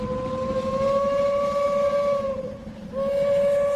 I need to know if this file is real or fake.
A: real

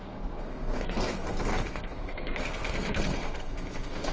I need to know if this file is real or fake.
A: fake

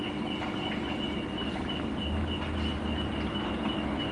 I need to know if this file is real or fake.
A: real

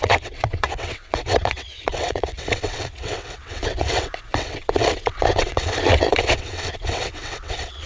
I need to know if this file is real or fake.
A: fake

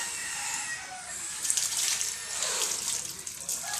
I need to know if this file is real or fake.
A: real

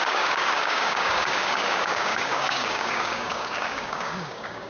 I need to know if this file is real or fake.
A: fake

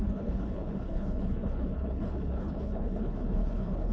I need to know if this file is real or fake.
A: fake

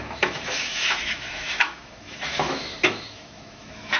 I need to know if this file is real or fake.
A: fake